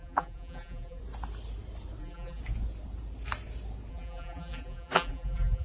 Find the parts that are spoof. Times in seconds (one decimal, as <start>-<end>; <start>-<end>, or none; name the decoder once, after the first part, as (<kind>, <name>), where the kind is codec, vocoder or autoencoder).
0.0-1.0 (vocoder, BigVGAN v2); 2.0-2.4; 3.9-5.6